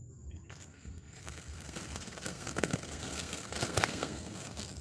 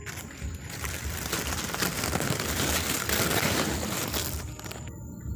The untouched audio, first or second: second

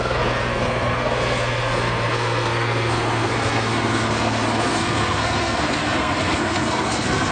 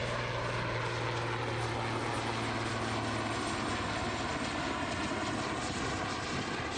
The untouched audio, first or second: second